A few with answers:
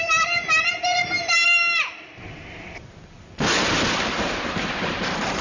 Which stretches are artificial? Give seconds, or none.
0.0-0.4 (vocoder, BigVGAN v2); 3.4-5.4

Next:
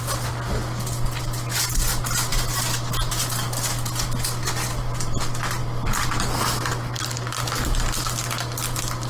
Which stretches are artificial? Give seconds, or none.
none

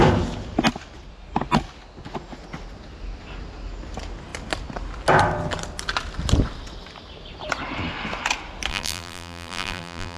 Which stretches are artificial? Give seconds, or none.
8.7-10.2 (vocoder, BigVGAN v2)

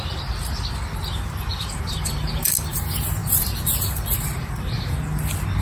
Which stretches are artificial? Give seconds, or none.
1.5-2.4 (vocoder, BigVGAN v2); 3.2-5.0

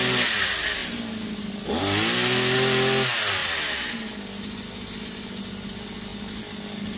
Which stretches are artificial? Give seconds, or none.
0.8-1.7 (vocoder, BigVGAN v2)

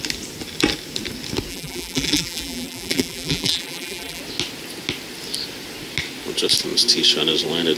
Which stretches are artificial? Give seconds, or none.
1.5-4.2 (vocoder, BigVGAN v2)

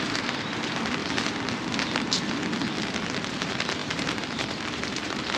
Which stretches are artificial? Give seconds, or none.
0.0-1.0 (vocoder, BigVGAN v2); 3.3-5.4